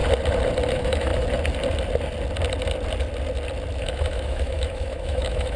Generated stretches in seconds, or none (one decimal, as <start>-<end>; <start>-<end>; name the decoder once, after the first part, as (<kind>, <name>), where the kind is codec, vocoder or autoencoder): 0.7-1.1 (autoencoder, DAC-VAE); 3.8-5.6